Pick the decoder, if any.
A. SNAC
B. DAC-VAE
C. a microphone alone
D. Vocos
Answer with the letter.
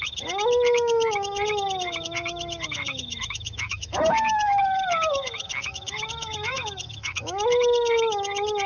B